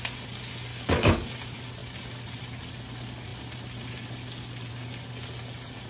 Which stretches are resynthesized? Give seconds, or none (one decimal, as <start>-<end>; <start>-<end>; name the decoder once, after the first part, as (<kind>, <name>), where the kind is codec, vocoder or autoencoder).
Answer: 0.7-1.3 (codec, DAC)

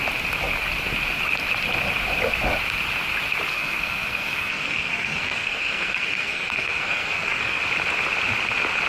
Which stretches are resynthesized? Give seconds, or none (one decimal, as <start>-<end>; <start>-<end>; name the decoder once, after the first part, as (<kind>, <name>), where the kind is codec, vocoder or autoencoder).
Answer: 3.5-7.6 (codec, SNAC)

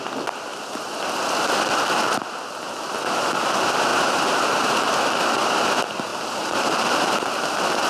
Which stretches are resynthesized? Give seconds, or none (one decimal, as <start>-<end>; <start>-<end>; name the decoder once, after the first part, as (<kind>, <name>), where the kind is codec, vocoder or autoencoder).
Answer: 0.5-1.0 (vocoder, BigVGAN v2); 3.9-4.9

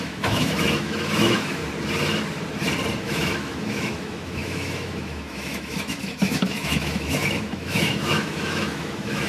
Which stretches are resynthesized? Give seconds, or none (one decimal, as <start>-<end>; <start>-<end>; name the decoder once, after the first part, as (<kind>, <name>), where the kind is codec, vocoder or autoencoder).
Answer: 0.0-1.6 (autoencoder, DAC-VAE); 3.0-9.3